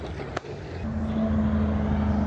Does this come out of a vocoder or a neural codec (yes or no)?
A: no